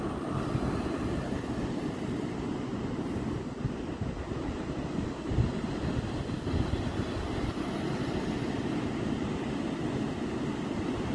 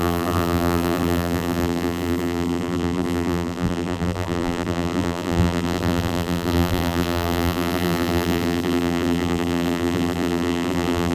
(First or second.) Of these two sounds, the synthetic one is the second